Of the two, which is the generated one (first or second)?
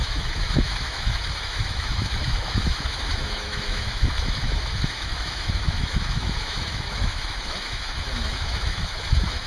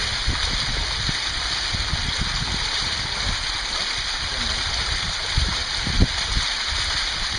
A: first